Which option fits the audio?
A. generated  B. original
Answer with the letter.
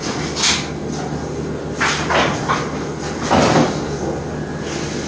B